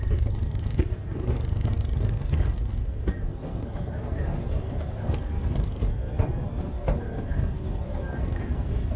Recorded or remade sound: remade